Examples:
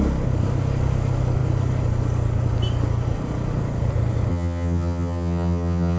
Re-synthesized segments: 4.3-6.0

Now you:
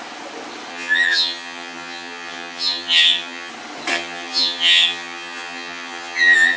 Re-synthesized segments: 0.7-3.5; 3.9-6.6

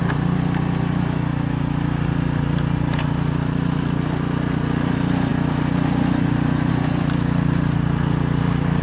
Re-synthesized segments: none